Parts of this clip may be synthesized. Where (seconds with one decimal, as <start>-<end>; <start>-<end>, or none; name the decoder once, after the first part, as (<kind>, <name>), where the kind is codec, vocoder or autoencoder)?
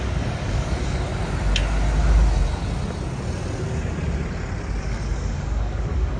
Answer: 0.0-1.1 (codec, DAC); 4.8-6.2